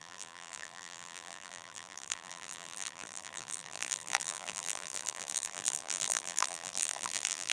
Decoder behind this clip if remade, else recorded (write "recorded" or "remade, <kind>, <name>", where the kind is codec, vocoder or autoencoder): remade, vocoder, BigVGAN v2